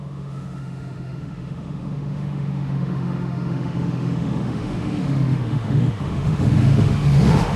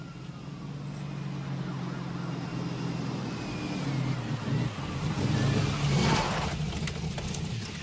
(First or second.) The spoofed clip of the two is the first